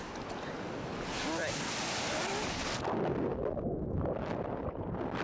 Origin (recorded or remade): recorded